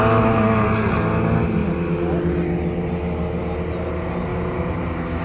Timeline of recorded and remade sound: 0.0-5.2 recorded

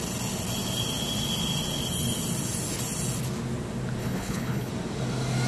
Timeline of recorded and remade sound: 0.0-4.0 recorded; 4.0-4.7 remade; 4.7-5.5 recorded